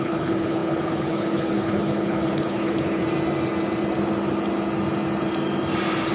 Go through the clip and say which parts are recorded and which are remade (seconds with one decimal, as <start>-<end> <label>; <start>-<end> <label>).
0.0-3.0 remade; 3.0-6.1 recorded

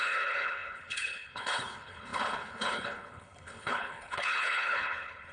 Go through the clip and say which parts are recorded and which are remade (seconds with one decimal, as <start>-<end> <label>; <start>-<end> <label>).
0.0-5.3 remade